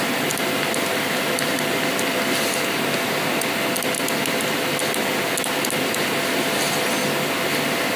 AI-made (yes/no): no